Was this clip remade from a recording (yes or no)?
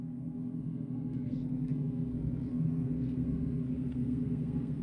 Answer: yes